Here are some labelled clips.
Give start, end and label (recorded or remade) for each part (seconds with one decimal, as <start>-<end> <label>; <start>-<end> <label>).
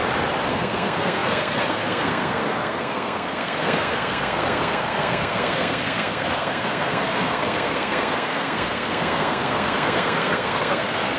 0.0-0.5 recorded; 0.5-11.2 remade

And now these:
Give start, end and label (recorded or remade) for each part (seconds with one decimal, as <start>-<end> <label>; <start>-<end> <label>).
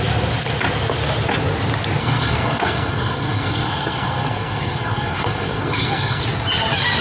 0.0-2.0 recorded; 2.0-6.2 remade; 6.2-7.0 recorded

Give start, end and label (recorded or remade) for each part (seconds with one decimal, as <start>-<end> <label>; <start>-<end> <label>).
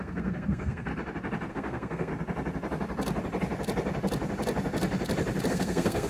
0.0-0.9 remade; 0.9-1.5 recorded; 1.5-2.1 remade; 2.1-5.5 recorded; 5.5-6.1 remade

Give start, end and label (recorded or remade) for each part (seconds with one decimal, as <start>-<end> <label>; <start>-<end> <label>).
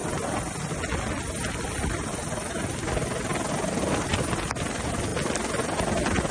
0.0-6.3 recorded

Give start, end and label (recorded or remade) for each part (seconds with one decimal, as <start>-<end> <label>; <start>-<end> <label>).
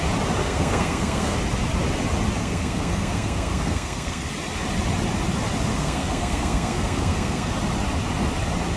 0.0-0.4 recorded; 0.4-1.4 remade; 1.4-2.4 recorded; 2.4-4.3 remade; 4.3-5.7 recorded; 5.7-7.5 remade; 7.5-8.8 recorded